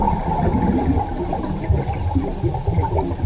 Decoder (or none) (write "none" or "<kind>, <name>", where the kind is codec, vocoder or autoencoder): none